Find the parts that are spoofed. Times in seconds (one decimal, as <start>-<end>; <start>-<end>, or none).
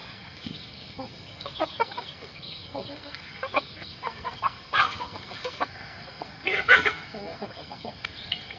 0.0-8.6